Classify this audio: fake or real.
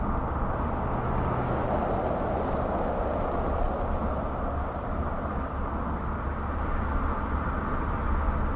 real